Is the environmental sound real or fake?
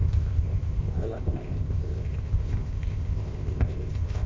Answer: fake